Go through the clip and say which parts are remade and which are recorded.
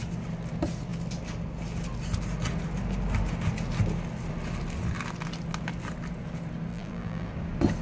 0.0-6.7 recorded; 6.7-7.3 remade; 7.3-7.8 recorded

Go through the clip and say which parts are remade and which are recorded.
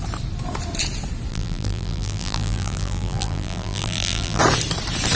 0.0-1.3 recorded; 1.3-4.4 remade; 4.4-5.2 recorded